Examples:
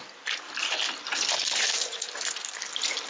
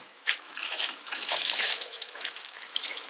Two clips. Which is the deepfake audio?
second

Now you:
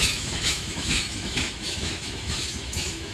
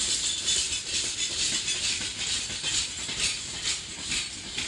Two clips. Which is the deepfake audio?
first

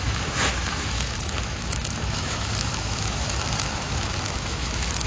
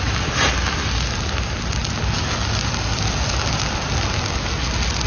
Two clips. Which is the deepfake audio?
first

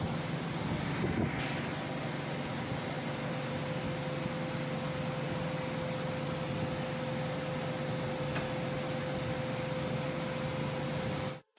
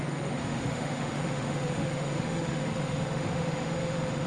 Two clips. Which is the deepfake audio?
second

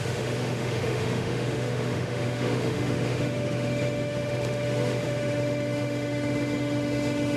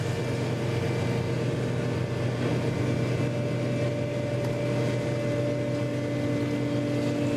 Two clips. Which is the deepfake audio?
first